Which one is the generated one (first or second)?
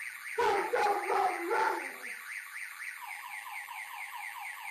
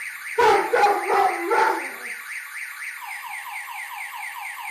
first